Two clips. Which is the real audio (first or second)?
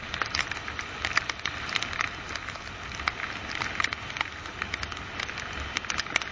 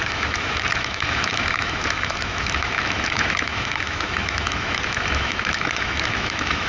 first